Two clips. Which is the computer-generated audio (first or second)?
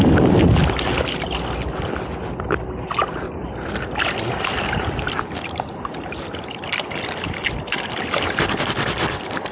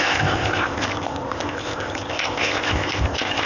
second